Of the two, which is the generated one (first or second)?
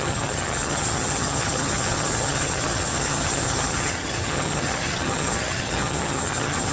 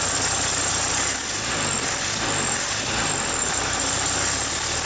first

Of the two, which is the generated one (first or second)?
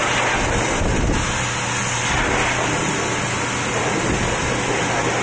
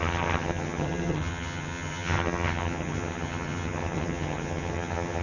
second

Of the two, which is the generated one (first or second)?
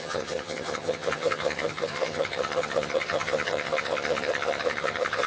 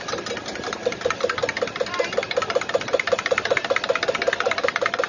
first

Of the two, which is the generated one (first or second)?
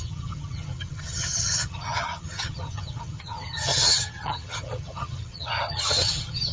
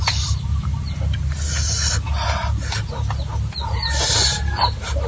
first